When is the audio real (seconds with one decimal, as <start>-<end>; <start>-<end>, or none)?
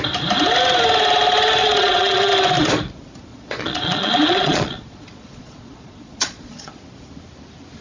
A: 0.0-1.6; 2.3-3.3; 6.7-7.8